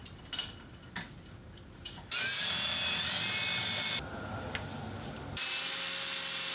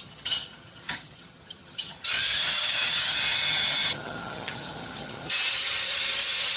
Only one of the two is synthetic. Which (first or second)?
second